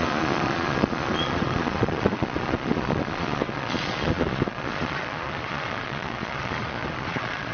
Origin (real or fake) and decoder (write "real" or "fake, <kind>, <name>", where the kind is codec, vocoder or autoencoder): fake, vocoder, Vocos